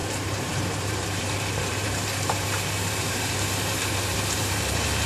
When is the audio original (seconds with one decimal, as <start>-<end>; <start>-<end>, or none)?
none